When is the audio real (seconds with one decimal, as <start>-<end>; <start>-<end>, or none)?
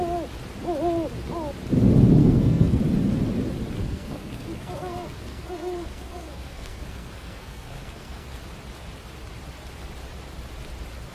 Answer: 0.0-2.2; 2.8-3.8; 8.4-11.1